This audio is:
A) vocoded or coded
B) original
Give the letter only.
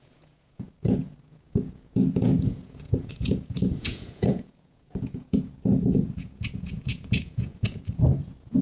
A